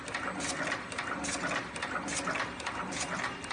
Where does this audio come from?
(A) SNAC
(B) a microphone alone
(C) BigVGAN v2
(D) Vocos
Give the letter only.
B